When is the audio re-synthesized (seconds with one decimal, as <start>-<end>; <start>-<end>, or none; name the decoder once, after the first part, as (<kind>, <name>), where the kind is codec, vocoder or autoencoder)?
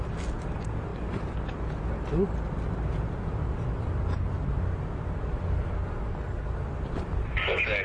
none